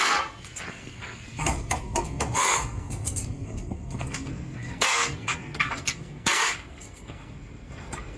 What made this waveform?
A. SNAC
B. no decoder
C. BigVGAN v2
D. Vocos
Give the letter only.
A